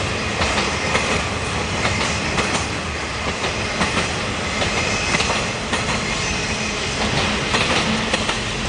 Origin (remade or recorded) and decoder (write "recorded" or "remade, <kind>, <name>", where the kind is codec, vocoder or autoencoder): recorded